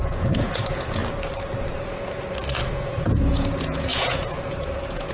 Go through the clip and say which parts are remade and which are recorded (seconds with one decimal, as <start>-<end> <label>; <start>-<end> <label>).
0.0-1.0 remade; 1.0-2.7 recorded; 2.7-5.1 remade